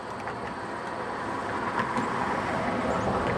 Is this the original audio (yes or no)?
yes